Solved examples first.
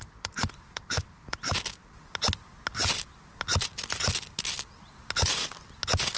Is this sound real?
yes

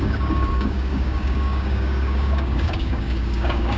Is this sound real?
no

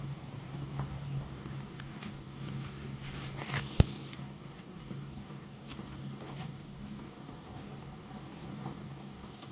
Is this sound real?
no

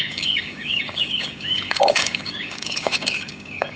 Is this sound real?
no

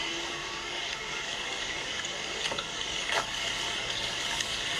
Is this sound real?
no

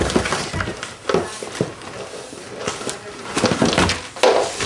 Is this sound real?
yes